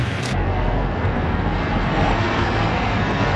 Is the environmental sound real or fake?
fake